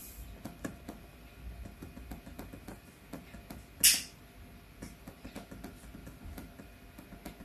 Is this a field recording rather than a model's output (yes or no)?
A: yes